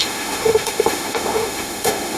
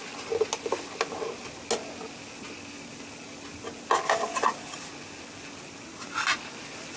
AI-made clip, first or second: first